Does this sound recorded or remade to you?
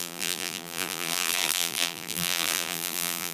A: remade